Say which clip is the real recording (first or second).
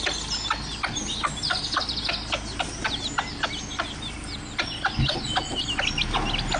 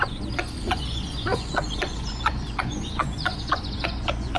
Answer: first